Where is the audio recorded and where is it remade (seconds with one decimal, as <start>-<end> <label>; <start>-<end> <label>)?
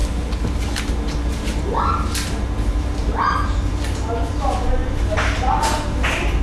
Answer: 0.0-6.4 recorded